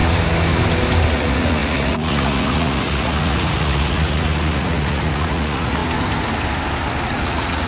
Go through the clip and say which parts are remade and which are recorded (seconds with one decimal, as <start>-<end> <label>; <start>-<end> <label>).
0.0-1.1 recorded; 1.1-5.8 remade; 5.8-7.0 recorded; 7.0-7.7 remade